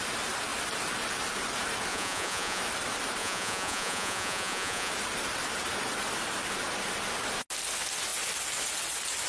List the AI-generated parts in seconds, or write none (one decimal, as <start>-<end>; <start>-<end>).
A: 1.9-2.6; 3.2-4.9